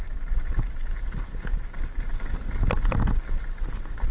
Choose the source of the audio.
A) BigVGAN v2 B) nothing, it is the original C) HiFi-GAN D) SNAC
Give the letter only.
B